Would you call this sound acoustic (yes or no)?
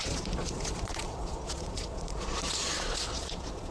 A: no